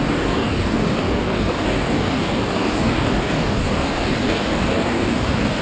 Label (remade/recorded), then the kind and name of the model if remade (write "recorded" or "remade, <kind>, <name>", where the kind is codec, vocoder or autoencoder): remade, codec, DAC